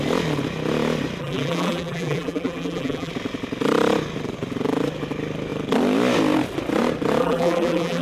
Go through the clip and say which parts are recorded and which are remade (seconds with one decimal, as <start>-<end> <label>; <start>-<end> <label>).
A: 0.0-1.2 recorded; 1.2-3.1 remade; 3.1-7.2 recorded; 7.2-8.0 remade